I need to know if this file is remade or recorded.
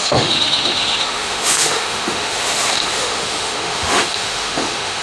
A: remade